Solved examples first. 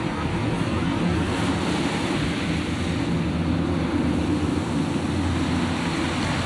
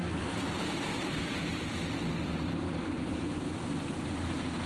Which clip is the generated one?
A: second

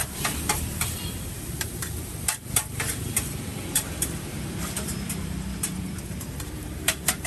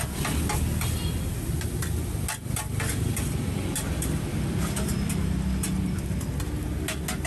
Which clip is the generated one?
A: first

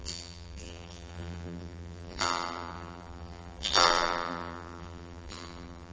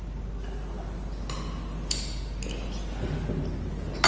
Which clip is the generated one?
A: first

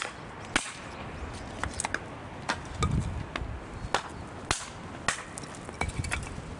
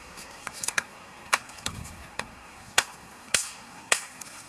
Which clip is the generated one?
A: second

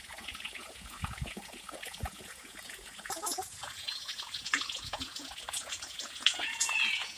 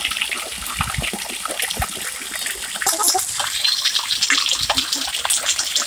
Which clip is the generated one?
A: first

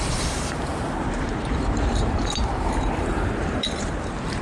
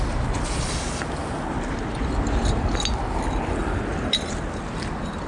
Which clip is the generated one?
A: first